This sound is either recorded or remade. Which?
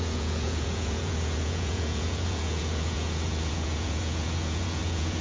remade